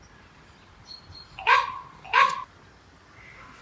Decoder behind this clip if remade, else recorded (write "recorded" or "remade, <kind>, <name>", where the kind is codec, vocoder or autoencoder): recorded